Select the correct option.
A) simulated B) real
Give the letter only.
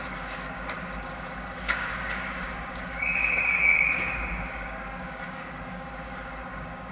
A